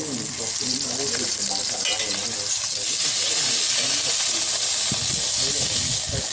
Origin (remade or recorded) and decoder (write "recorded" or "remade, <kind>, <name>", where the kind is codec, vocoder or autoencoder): recorded